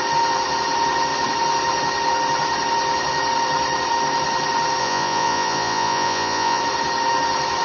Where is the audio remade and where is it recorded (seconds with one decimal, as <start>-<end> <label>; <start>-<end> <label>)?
0.0-4.8 recorded; 4.8-6.6 remade; 6.6-7.6 recorded